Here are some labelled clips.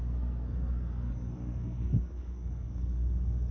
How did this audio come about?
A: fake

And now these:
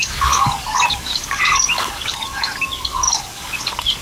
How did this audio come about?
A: fake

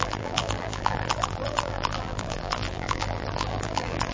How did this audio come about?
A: fake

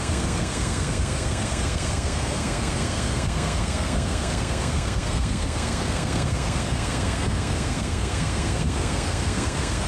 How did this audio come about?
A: fake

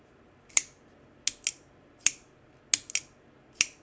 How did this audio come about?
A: real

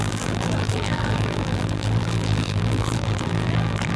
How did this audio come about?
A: fake